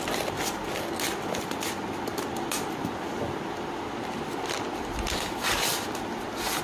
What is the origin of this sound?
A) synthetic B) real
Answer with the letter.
B